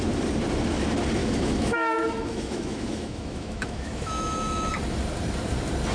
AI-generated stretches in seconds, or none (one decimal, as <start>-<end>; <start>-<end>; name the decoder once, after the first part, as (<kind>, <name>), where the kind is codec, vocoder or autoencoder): 1.2-4.7 (autoencoder, DAC-VAE)